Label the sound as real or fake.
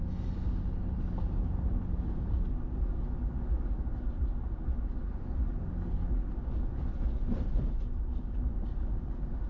real